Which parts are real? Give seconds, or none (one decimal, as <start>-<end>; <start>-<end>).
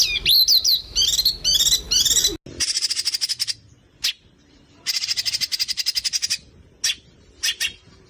0.0-0.6; 1.2-8.1